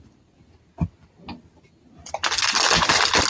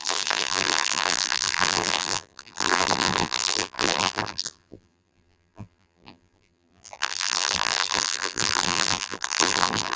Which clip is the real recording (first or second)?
first